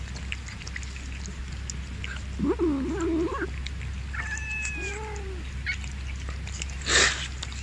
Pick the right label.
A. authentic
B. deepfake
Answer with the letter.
A